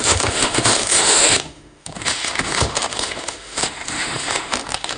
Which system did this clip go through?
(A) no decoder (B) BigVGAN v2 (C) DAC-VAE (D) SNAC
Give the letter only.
C